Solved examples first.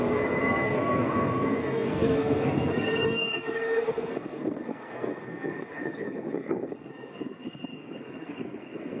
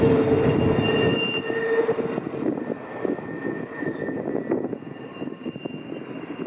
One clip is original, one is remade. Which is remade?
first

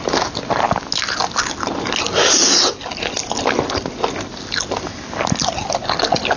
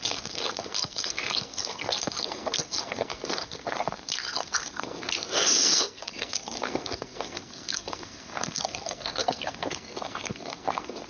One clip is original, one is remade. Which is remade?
second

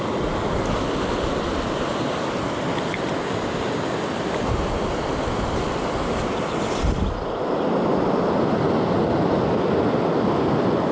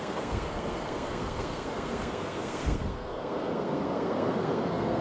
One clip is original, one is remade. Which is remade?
second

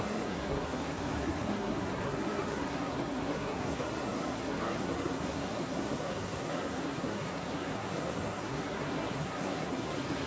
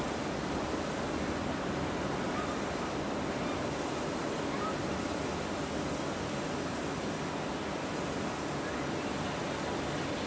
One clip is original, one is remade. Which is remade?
first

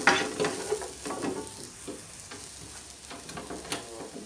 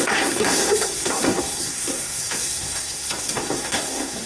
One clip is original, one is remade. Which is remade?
second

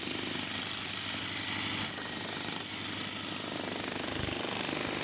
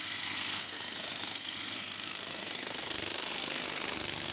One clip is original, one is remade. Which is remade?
second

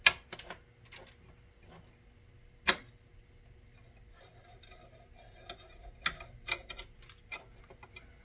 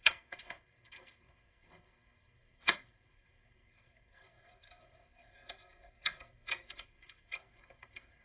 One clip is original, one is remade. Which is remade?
second